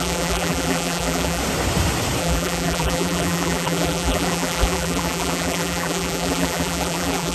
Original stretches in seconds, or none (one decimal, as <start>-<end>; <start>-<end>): 1.4-2.2